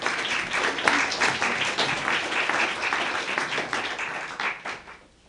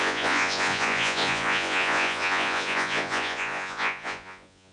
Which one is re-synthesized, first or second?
second